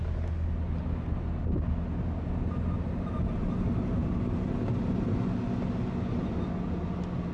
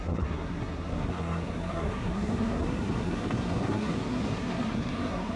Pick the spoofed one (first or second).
second